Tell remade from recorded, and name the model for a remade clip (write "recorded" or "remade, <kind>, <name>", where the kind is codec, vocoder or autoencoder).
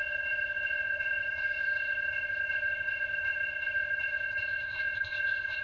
remade, codec, ZipCodec